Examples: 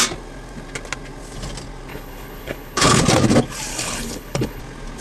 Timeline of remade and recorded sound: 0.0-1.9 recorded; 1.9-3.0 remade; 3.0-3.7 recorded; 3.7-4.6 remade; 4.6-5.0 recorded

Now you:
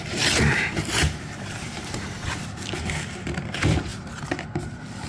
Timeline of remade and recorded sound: 0.0-3.9 remade; 3.9-4.6 recorded; 4.6-5.1 remade

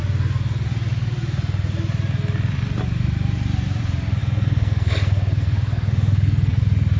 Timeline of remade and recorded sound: 0.0-4.2 recorded; 4.2-6.6 remade; 6.6-7.0 recorded

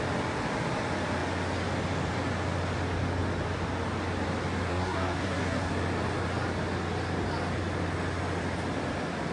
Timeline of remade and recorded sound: 0.0-4.7 recorded; 4.7-5.7 remade; 5.7-9.3 recorded

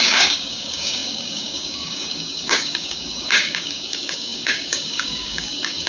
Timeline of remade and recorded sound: 0.0-5.9 remade

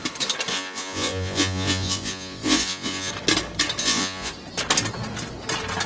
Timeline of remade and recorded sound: 0.0-0.5 recorded; 0.5-3.1 remade; 3.1-3.8 recorded; 3.8-4.3 remade; 4.3-5.9 recorded